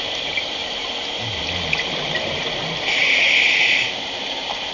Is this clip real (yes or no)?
yes